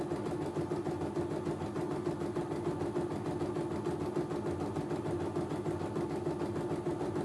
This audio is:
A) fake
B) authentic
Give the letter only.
B